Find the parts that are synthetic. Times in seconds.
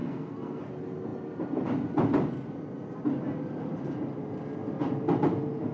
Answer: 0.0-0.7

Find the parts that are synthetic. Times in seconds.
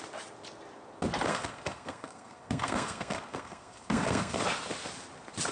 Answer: 1.3-4.4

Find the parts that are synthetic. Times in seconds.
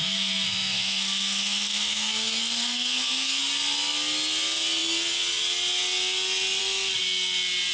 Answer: 0.0-3.4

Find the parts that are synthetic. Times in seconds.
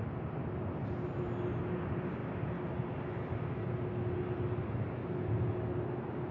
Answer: none